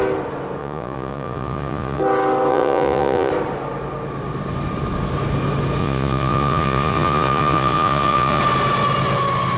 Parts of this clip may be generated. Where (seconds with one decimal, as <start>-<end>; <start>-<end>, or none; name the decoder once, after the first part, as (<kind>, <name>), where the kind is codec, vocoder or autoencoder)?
0.6-2.0 (vocoder, Vocos); 2.5-3.3; 5.8-8.4